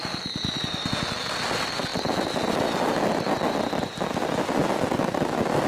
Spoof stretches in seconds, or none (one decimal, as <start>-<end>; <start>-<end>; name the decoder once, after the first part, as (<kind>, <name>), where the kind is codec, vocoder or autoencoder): none